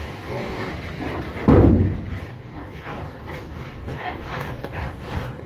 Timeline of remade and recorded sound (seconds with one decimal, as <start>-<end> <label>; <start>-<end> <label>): 0.0-0.7 remade; 0.7-2.2 recorded; 2.2-5.5 remade